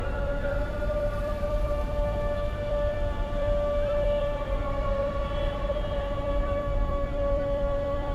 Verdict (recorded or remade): remade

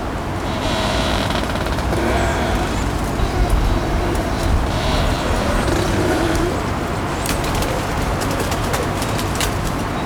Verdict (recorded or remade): remade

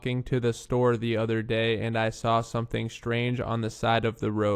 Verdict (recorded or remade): recorded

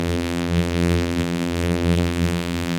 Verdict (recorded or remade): remade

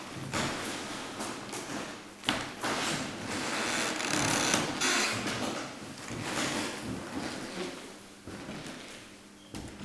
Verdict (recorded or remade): recorded